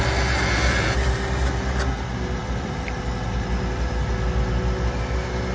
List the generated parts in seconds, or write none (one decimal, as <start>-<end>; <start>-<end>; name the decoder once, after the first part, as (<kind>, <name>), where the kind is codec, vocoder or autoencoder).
2.4-3.0 (vocoder, BigVGAN v2)